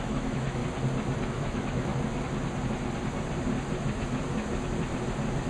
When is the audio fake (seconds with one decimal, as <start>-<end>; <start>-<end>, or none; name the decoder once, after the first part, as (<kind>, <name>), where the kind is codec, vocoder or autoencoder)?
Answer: 0.0-0.6 (autoencoder, DAC-VAE); 1.3-1.9